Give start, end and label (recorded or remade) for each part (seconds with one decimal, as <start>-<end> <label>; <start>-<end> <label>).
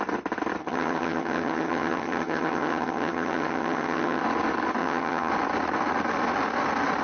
0.0-0.6 recorded; 0.6-4.2 remade; 4.2-4.8 recorded; 4.8-5.3 remade; 5.3-7.0 recorded